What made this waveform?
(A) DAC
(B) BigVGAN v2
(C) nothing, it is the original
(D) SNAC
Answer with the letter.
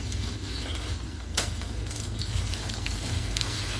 D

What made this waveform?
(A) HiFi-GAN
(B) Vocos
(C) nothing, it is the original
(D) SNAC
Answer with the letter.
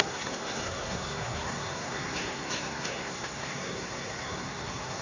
D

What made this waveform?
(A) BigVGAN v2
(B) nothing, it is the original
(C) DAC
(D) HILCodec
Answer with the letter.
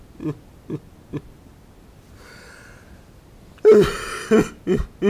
B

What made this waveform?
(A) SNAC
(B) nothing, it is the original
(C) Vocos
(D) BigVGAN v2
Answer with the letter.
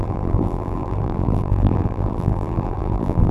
D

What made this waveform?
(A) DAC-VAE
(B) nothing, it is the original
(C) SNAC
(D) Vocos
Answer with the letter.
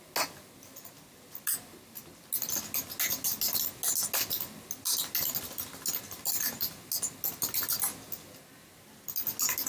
B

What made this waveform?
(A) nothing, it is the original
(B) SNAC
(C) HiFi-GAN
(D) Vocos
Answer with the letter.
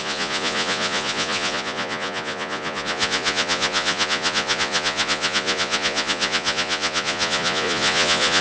D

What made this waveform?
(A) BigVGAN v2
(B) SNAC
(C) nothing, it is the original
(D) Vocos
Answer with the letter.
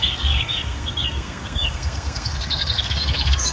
B